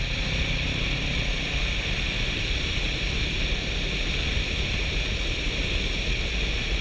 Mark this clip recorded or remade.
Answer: recorded